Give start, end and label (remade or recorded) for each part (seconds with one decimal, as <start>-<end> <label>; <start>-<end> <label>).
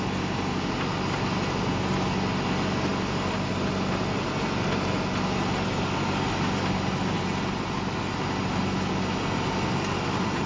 0.0-10.5 recorded